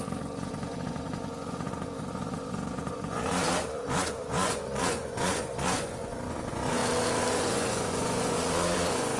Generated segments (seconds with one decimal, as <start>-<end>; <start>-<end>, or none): 0.0-6.8; 7.3-9.2